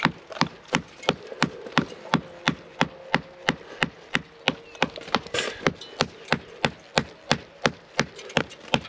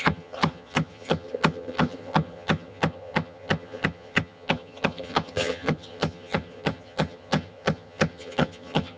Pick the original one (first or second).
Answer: first